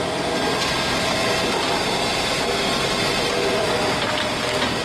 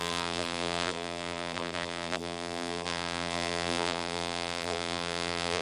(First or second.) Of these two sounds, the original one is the first